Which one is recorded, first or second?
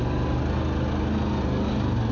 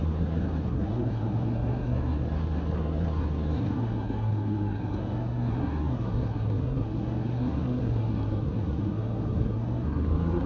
first